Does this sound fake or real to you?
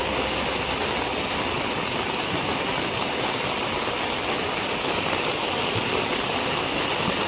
real